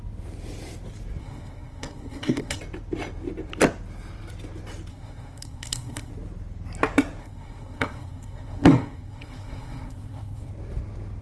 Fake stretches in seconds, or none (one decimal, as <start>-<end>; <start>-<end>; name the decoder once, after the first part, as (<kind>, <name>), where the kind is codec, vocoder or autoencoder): 1.2-2.6 (codec, SNAC); 4.9-6.1; 7.2-10.5